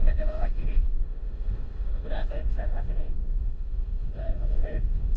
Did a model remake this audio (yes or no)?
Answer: yes